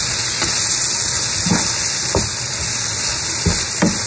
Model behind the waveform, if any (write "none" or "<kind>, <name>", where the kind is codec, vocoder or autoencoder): none